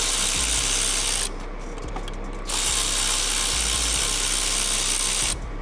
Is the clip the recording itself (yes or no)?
yes